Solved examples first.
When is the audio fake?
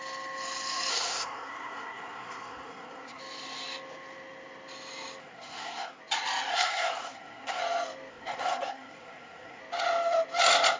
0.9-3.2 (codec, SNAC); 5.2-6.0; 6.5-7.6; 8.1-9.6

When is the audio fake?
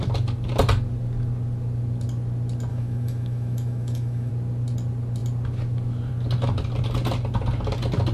2.7-4.3 (autoencoder, DAC-VAE)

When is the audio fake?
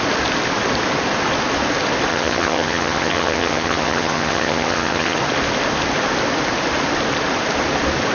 2.1-5.2 (vocoder, HiFi-GAN)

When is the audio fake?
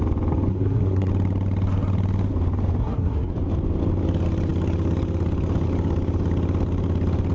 0.5-1.1 (codec, SNAC); 2.8-3.3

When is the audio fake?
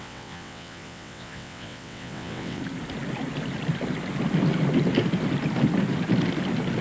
0.0-2.6 (vocoder, WaveNeXt)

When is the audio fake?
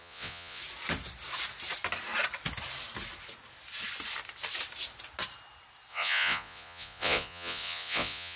0.0-0.6 (vocoder, Vocos); 5.9-8.4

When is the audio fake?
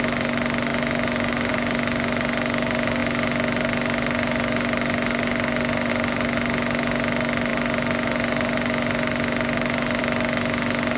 none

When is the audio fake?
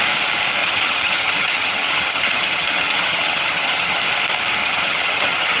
0.6-4.0 (vocoder, HiFi-GAN); 4.6-5.6